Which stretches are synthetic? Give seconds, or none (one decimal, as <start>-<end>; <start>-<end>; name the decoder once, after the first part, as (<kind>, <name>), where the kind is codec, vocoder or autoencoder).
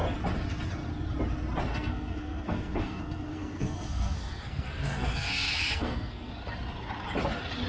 1.7-6.3 (codec, SNAC)